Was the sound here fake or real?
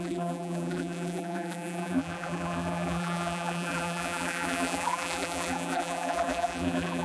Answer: fake